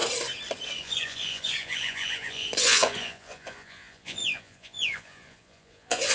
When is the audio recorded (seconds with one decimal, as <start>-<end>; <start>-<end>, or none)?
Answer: 0.0-0.8